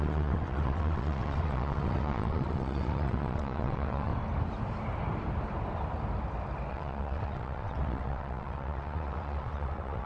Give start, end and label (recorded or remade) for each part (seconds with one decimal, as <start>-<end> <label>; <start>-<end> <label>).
0.0-4.1 remade; 4.1-6.7 recorded; 6.7-10.1 remade